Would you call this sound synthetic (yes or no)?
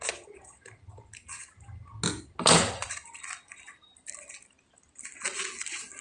no